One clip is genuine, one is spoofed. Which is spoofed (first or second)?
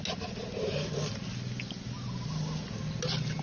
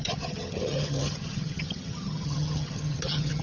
second